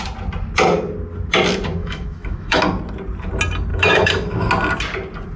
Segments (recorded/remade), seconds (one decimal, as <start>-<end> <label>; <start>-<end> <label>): 0.0-1.8 recorded; 1.8-2.6 remade; 2.6-3.7 recorded; 3.7-4.5 remade; 4.5-5.4 recorded